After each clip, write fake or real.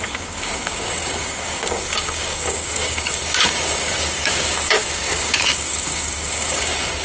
fake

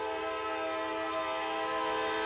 real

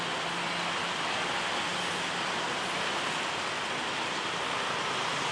real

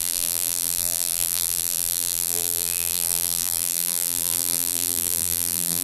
fake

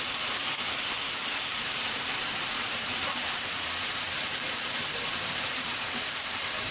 fake